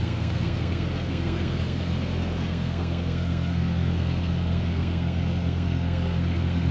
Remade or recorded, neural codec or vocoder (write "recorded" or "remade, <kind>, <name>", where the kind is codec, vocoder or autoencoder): remade, codec, SNAC